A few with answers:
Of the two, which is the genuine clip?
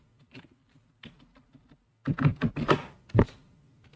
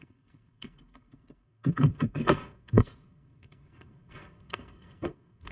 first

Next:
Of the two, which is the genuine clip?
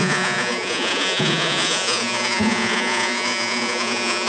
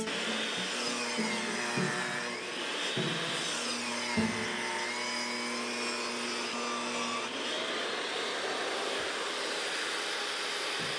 second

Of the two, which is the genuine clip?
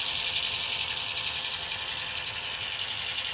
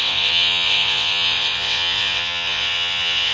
first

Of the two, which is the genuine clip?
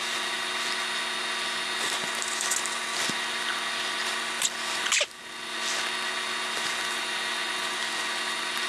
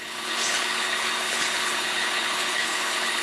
first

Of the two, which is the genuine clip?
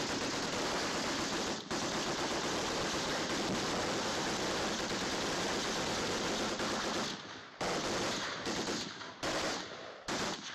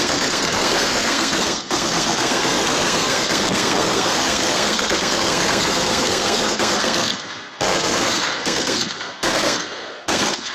first